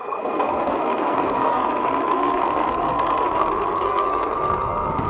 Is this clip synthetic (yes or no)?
yes